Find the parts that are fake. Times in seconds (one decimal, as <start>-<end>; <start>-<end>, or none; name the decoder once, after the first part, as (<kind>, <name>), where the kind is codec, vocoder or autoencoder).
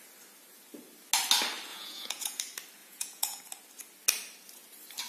1.7-2.4 (vocoder, Vocos); 2.8-3.4